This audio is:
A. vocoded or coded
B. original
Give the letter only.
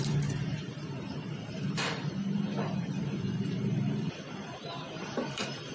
A